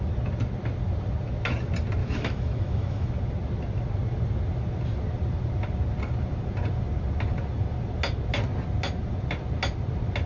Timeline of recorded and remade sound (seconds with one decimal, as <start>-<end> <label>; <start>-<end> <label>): 0.0-2.0 recorded; 2.0-3.1 remade; 3.1-10.3 recorded